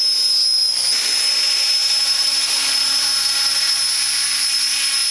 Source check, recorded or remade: recorded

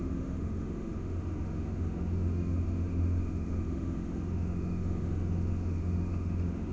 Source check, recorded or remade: remade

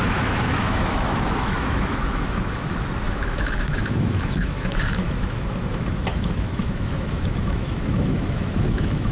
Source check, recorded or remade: remade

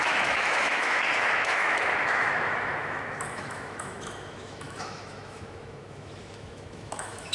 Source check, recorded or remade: remade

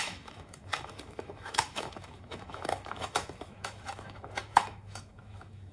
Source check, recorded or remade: remade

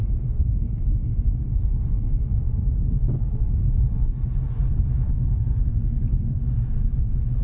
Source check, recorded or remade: recorded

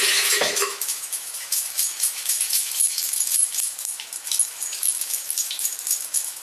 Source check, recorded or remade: remade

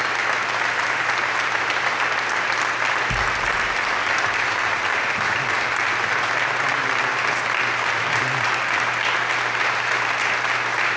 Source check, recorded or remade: recorded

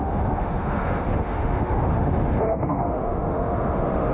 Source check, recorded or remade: remade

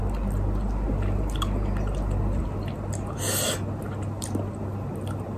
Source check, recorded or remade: recorded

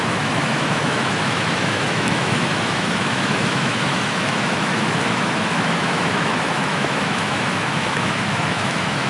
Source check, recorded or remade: remade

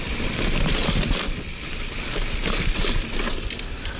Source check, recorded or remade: recorded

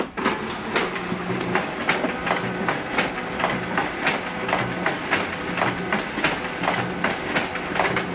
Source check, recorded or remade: recorded